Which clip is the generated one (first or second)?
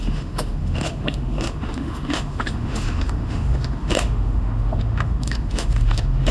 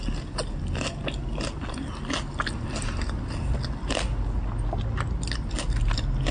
first